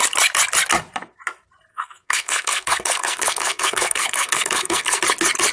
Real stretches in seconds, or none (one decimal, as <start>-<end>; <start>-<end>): 0.0-1.7; 5.0-5.5